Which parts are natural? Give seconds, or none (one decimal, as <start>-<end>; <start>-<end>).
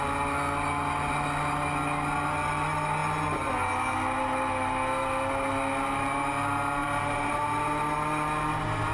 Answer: 0.0-6.8; 7.4-8.9